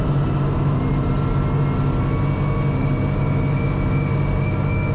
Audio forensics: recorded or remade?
recorded